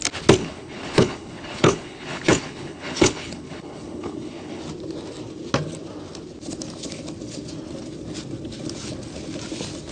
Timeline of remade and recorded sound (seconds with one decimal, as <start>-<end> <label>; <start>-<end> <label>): 0.0-0.4 recorded; 0.4-4.6 remade; 4.6-9.9 recorded